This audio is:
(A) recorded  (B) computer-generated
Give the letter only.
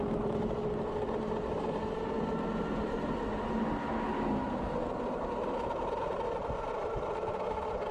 A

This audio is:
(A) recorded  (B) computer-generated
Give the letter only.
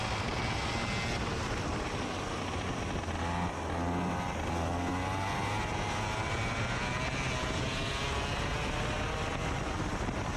A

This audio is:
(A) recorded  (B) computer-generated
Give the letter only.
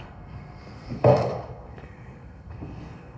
B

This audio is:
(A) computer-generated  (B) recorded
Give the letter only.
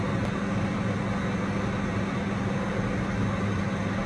B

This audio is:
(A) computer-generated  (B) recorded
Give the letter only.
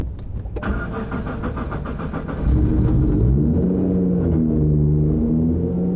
B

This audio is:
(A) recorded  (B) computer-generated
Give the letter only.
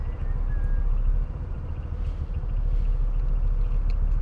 A